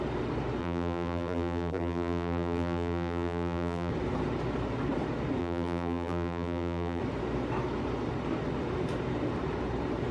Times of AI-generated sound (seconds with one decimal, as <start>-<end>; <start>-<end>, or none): 0.6-3.9; 5.4-7.0